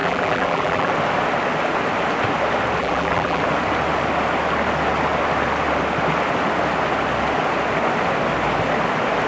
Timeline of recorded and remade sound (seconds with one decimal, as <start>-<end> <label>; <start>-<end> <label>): 0.0-0.9 remade; 0.9-2.8 recorded; 2.8-3.4 remade; 3.4-9.3 recorded

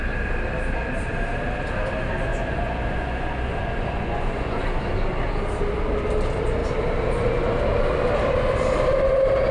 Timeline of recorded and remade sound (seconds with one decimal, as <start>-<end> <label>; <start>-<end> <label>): 0.0-2.3 recorded; 2.3-4.6 remade; 4.6-9.5 recorded

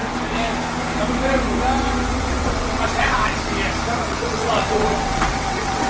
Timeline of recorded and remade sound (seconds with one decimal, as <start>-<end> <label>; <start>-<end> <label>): 0.0-2.1 recorded; 2.1-3.5 remade; 3.5-4.0 recorded; 4.0-5.9 remade

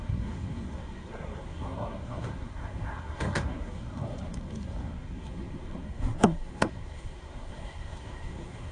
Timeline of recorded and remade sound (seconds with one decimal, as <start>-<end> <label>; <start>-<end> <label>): 0.0-8.7 remade

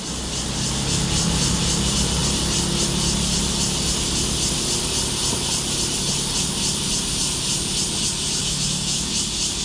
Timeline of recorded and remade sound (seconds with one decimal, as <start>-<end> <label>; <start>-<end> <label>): 0.0-8.4 recorded; 8.4-9.1 remade; 9.1-9.6 recorded